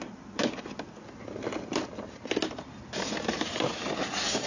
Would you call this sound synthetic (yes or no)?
no